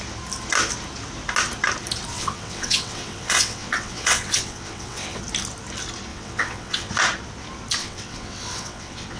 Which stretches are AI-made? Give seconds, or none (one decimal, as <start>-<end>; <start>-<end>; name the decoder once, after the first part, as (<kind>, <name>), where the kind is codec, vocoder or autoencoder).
2.1-5.2 (vocoder, WaveNeXt); 6.1-6.9; 7.8-9.2